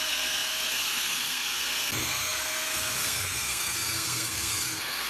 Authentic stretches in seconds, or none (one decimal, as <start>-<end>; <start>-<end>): none